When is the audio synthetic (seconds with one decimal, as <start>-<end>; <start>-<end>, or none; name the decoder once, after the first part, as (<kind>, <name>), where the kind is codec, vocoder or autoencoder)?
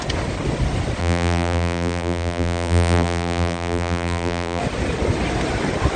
1.0-4.6 (vocoder, BigVGAN v2)